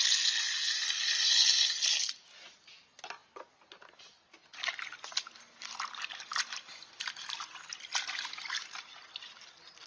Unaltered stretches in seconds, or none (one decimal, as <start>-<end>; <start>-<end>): 0.0-9.9